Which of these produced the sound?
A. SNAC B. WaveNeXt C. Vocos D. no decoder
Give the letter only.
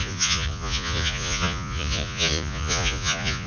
C